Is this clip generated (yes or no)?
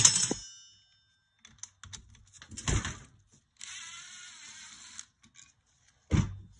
no